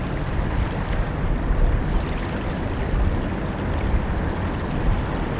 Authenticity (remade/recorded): recorded